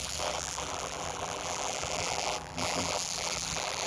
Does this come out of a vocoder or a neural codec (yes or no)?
yes